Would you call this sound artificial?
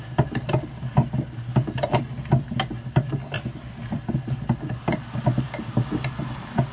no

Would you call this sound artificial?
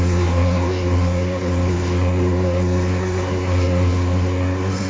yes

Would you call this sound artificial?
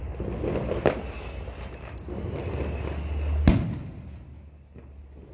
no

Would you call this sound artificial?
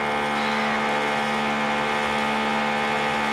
no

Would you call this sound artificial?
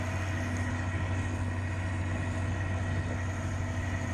no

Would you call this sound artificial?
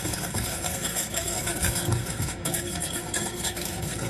yes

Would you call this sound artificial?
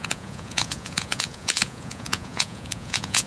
yes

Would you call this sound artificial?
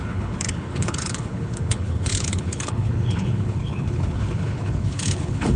yes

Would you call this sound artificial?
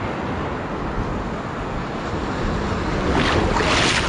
no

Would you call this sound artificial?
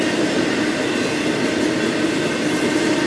no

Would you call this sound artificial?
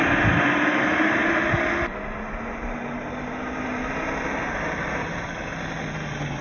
no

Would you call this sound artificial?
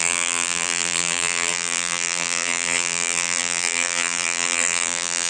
yes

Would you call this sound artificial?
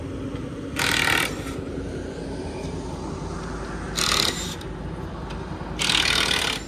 no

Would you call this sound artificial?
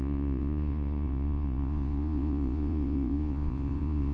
yes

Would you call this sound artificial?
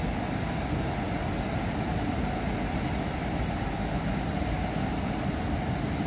no